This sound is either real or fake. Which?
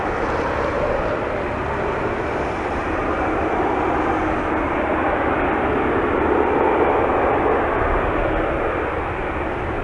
real